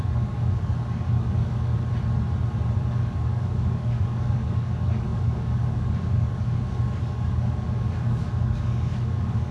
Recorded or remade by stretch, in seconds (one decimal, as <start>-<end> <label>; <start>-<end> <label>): 0.0-1.7 remade; 1.7-2.8 recorded; 2.8-9.5 remade